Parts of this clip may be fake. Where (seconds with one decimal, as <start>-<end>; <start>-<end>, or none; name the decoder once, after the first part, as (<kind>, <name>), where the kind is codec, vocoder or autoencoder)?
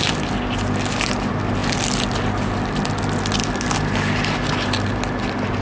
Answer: none